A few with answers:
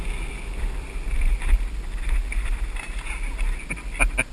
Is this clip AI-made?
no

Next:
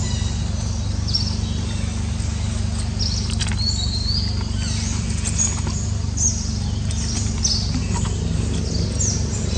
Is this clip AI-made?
no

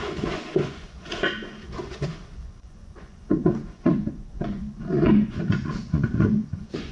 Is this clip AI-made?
yes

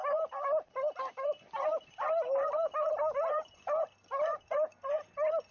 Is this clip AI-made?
no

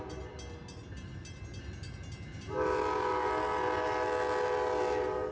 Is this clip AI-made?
no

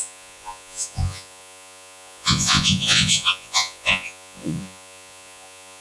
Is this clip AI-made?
yes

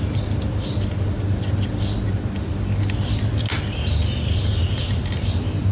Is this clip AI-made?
no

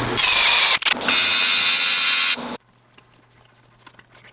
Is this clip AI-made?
no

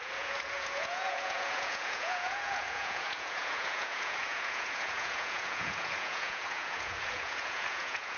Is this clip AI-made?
yes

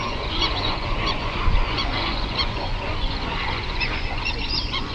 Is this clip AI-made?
yes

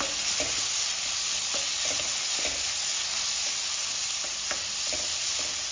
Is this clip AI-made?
no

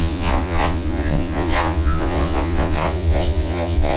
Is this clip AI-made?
yes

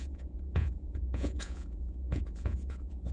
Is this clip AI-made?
yes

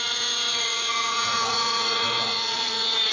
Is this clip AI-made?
yes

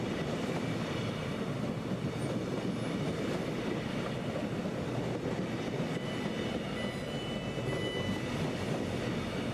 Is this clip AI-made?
no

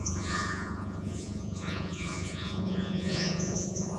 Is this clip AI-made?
yes